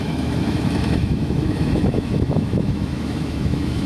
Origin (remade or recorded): remade